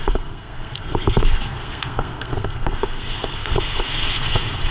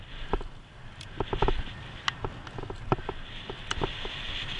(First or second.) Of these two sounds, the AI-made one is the first